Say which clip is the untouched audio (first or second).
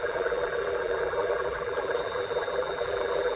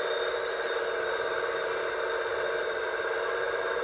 second